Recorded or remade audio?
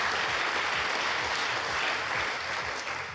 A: recorded